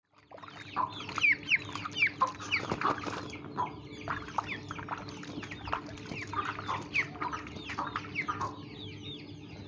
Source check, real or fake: real